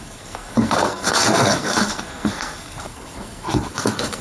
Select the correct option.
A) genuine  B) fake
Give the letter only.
B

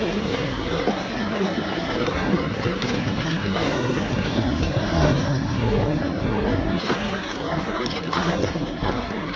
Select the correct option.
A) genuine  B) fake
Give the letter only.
B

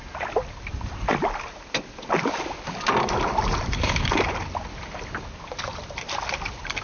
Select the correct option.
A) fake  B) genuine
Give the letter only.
B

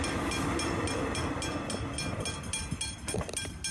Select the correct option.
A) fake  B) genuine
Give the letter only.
B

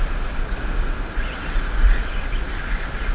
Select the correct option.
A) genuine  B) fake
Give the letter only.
A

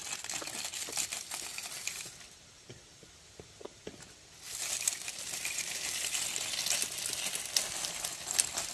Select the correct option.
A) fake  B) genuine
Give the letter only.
B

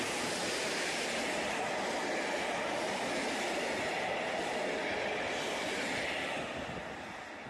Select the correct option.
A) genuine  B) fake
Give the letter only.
A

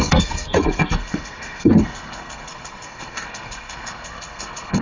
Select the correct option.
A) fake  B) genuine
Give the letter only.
A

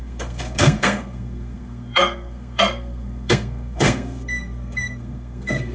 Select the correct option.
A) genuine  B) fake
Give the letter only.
B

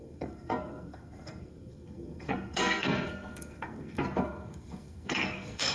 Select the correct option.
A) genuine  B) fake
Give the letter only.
B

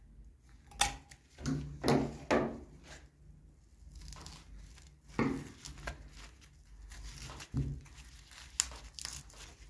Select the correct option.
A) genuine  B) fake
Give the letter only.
A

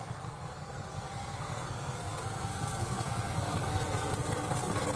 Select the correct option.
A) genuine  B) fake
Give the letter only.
B